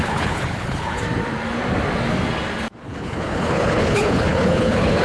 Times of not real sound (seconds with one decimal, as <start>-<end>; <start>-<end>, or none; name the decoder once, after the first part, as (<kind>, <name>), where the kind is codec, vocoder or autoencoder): 0.0-1.0 (codec, HILCodec); 2.8-5.0